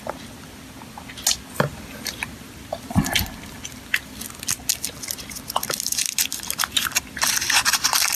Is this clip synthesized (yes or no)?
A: no